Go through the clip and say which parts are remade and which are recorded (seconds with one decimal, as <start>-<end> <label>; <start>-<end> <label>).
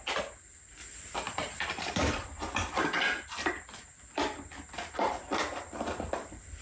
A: 0.0-6.6 remade